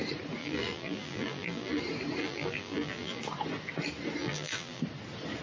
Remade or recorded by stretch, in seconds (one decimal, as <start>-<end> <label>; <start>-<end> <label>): 0.0-0.4 recorded; 0.4-1.8 remade; 1.8-2.2 recorded; 2.2-3.2 remade; 3.2-4.2 recorded; 4.2-4.8 remade; 4.8-5.4 recorded